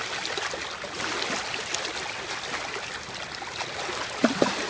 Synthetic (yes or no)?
no